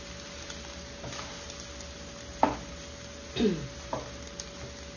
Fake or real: real